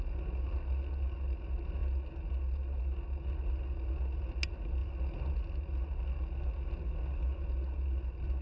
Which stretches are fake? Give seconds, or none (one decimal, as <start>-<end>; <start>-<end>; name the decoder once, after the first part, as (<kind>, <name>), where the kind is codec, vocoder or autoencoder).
none